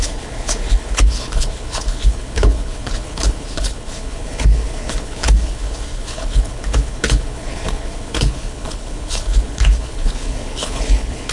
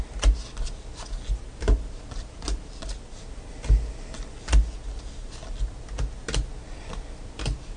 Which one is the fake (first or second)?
first